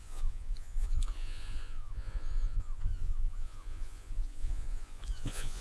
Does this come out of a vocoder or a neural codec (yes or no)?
yes